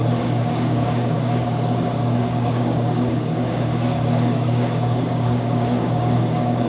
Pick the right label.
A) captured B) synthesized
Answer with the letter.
B